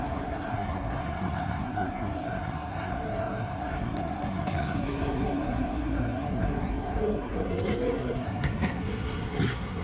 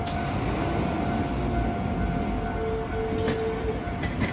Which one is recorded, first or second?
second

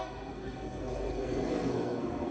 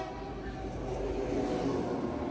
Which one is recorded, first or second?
second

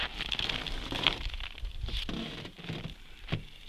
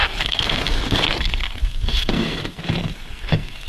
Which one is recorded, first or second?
first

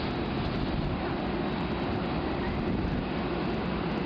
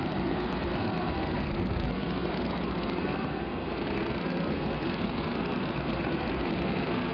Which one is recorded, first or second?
first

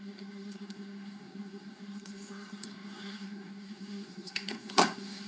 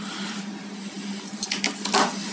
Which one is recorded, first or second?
second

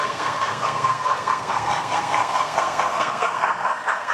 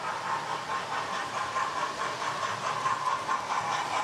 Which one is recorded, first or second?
second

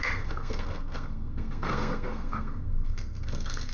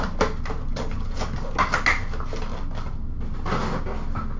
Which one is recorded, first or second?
second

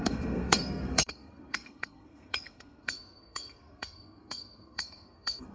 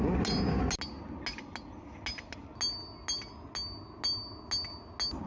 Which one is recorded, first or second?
second